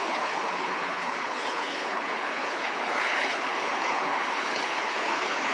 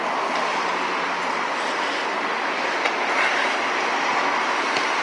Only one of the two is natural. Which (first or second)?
second